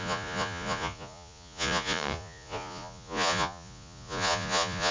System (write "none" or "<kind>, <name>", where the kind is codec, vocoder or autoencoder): vocoder, Vocos